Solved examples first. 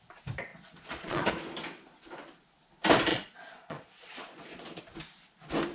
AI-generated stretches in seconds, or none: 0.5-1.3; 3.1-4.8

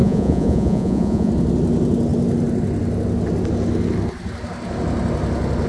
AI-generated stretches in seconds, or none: 0.0-1.3

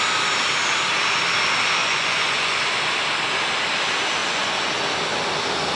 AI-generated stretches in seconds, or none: 1.8-2.6; 4.2-4.7

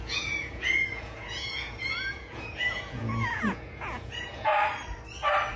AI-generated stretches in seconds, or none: 0.0-4.5

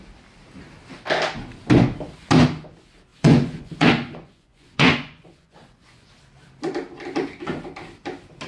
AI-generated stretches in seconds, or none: 3.1-6.1

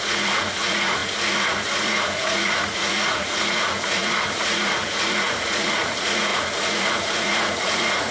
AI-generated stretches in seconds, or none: 0.0-8.1